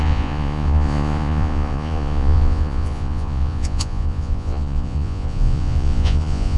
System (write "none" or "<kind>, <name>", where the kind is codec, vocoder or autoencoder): vocoder, Vocos